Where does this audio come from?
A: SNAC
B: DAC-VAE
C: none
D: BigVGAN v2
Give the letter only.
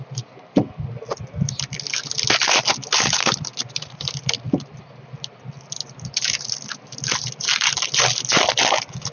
C